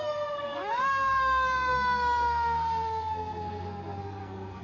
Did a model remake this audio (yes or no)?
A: yes